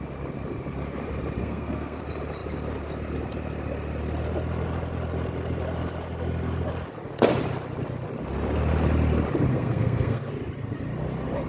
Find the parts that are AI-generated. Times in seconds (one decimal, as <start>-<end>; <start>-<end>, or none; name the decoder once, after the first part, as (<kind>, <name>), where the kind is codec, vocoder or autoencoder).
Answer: 1.4-2.0 (codec, SNAC); 9.5-10.3